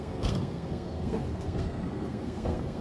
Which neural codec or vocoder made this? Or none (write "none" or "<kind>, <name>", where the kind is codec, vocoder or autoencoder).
codec, SNAC